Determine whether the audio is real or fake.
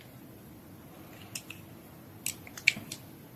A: real